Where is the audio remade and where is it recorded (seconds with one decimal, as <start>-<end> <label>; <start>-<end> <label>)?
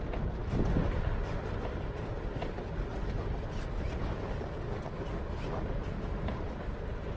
0.0-7.2 recorded